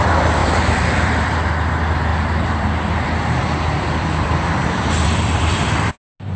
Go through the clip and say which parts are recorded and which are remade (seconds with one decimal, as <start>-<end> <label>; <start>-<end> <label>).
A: 0.0-0.4 recorded; 0.4-1.2 remade; 1.2-2.1 recorded; 2.1-5.9 remade; 5.9-6.4 recorded